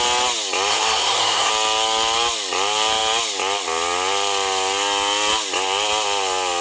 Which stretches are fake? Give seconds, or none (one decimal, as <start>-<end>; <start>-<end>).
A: 0.7-1.5